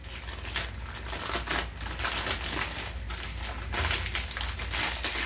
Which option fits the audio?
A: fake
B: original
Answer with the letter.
B